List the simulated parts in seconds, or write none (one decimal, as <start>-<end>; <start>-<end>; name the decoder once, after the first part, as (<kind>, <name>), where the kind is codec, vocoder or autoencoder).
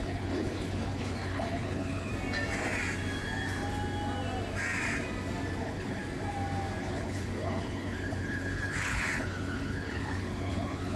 0.0-2.1 (codec, HILCodec); 5.6-6.0; 6.8-11.0